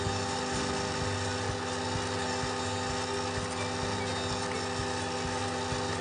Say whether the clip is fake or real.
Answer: real